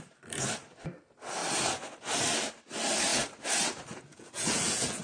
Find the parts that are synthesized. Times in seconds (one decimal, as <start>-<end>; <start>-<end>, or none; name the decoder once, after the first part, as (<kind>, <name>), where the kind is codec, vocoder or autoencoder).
4.1-5.0 (vocoder, Vocos)